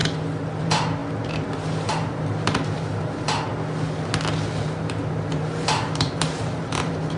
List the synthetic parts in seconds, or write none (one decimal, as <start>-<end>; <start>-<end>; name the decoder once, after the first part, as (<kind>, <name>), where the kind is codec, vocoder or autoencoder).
0.6-1.0 (vocoder, BigVGAN v2); 1.9-3.5; 4.6-7.2